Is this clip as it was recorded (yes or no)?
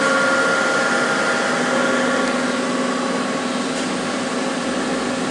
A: yes